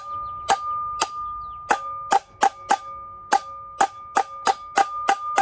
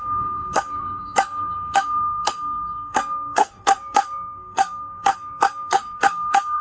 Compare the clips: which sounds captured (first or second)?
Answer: first